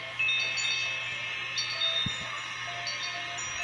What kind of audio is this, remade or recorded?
recorded